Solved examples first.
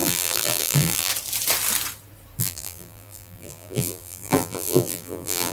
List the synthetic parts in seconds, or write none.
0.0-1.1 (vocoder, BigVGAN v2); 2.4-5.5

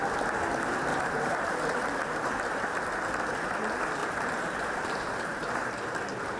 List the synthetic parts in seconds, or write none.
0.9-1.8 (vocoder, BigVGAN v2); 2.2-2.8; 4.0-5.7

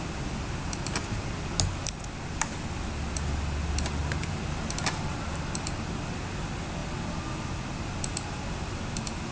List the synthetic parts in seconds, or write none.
4.0-6.0 (vocoder, BigVGAN v2)